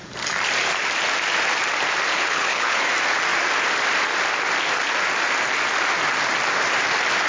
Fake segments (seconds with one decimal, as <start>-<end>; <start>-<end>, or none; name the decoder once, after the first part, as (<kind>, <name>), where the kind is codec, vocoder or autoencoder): 2.1-2.9 (codec, HILCodec)